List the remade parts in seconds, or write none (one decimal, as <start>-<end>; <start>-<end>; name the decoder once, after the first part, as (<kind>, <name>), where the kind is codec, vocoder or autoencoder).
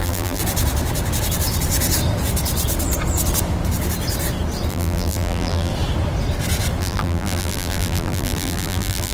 0.0-0.4 (vocoder, BigVGAN v2); 4.7-5.7; 6.8-9.1